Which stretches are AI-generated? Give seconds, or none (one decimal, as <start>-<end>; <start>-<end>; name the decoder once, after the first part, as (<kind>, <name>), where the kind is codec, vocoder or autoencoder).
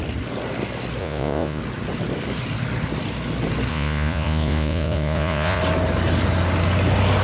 1.0-1.6 (vocoder, Vocos); 3.7-5.6